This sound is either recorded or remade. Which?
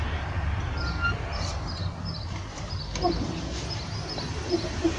recorded